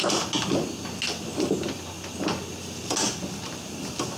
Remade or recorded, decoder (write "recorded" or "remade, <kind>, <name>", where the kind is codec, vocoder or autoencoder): recorded